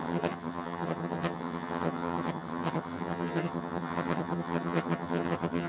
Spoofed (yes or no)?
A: yes